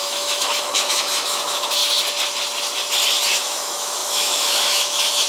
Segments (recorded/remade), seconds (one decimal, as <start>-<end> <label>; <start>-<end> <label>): 0.0-1.8 remade; 1.8-3.3 recorded; 3.3-5.3 remade

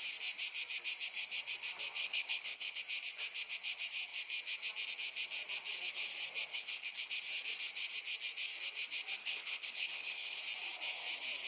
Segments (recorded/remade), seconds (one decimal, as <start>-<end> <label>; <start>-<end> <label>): 0.0-2.0 recorded; 2.0-2.8 remade; 2.8-6.5 recorded; 6.5-7.1 remade; 7.1-9.2 recorded; 9.2-10.4 remade; 10.4-11.5 recorded

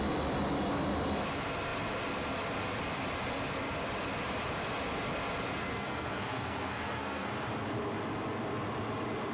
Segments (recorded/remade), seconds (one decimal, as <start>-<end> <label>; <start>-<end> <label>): 0.0-5.6 recorded; 5.6-7.3 remade; 7.3-9.3 recorded

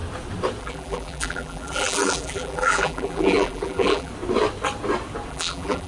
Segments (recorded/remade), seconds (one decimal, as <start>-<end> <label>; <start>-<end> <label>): 0.0-0.6 recorded; 0.6-4.1 remade; 4.1-5.3 recorded; 5.3-5.9 remade

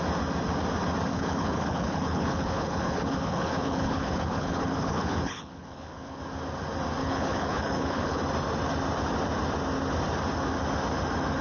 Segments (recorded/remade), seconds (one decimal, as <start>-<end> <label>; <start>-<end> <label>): 0.0-1.1 recorded; 1.1-6.2 remade; 6.2-7.0 recorded; 7.0-8.2 remade; 8.2-11.4 recorded

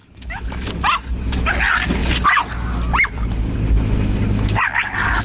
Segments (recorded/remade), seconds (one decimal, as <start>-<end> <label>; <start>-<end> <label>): 0.0-0.7 remade; 0.7-5.2 recorded

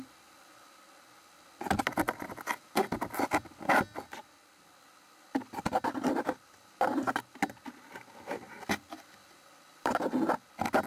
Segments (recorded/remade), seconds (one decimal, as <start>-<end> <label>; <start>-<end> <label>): 0.0-10.9 recorded